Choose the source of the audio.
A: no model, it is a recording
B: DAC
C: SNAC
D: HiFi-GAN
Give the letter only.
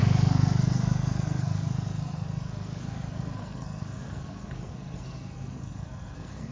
C